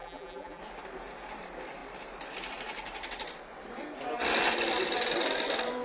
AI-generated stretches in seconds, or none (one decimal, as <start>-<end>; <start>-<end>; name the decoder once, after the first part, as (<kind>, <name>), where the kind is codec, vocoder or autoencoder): 0.0-0.6 (vocoder, BigVGAN v2)